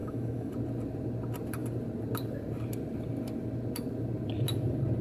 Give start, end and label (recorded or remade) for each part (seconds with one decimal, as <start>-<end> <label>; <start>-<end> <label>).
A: 0.0-0.5 remade; 0.5-5.0 recorded